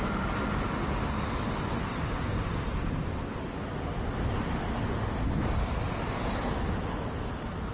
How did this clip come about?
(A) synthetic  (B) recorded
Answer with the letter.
B